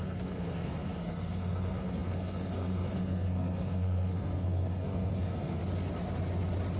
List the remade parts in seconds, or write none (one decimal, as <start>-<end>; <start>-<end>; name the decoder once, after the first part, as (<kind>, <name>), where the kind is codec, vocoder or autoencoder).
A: 0.0-5.6 (codec, SNAC)